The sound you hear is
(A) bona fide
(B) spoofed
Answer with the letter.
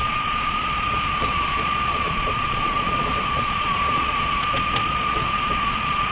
B